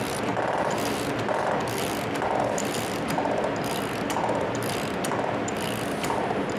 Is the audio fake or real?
real